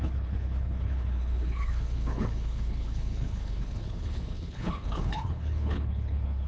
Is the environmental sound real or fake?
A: fake